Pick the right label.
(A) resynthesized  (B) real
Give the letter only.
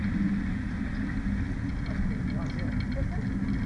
B